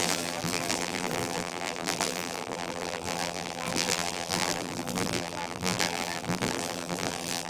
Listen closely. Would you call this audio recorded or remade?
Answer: remade